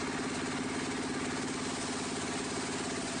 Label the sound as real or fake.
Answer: real